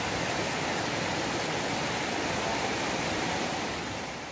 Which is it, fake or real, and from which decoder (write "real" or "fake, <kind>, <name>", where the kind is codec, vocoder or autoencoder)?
real